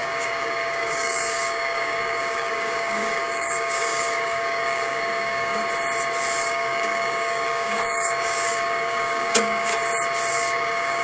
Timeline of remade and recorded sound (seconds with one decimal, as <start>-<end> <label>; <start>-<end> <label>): 0.0-5.6 remade; 5.6-6.4 recorded; 6.4-9.7 remade; 9.7-10.3 recorded; 10.3-11.0 remade